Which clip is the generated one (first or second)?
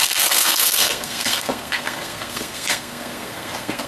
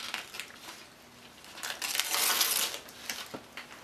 first